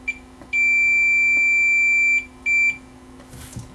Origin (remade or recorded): recorded